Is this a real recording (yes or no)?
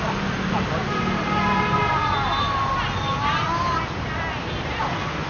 yes